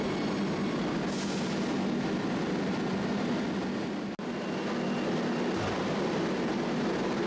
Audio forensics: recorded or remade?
recorded